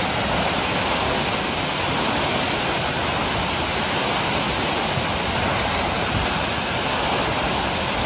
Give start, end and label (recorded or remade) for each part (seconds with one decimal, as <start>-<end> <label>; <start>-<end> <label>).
0.0-5.5 recorded; 5.5-6.8 remade; 6.8-8.1 recorded